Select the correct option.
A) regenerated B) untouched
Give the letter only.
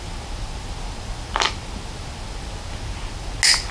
B